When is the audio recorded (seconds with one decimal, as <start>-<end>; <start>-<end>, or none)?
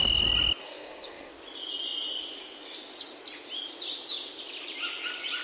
0.0-0.6; 1.3-5.4